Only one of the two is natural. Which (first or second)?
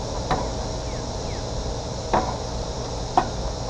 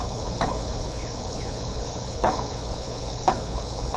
first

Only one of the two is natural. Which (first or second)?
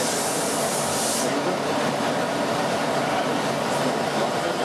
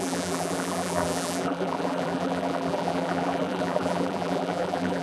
first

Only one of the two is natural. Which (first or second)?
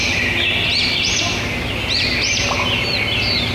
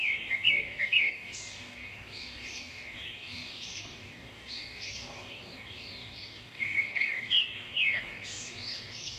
first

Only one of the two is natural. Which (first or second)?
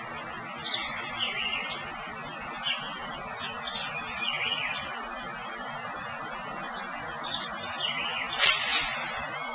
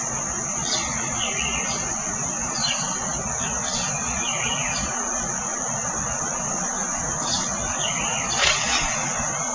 first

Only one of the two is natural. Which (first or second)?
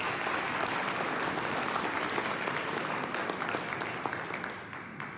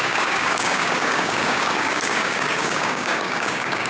first